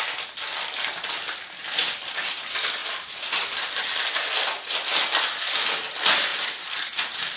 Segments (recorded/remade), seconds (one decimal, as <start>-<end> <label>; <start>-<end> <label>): 0.0-2.8 recorded; 2.8-4.0 remade; 4.0-7.4 recorded